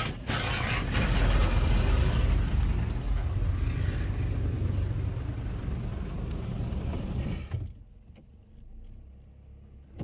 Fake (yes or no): no